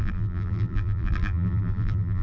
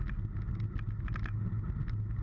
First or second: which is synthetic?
first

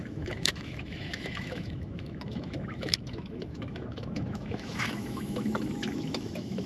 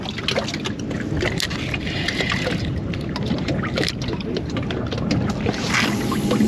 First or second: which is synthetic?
first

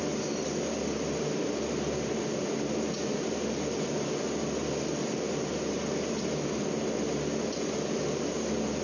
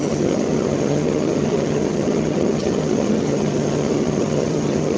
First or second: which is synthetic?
second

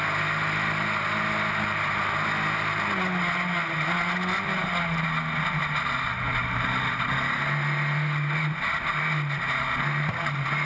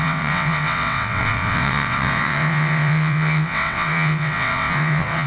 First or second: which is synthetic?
second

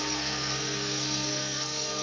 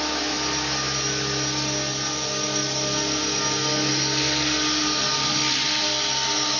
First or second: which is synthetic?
first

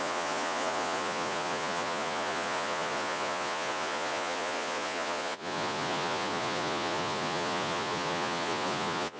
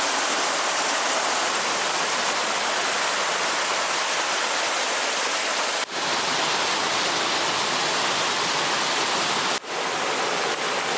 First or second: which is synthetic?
first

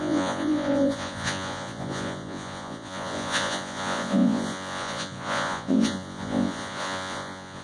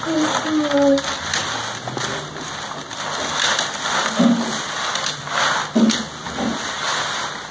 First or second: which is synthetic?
first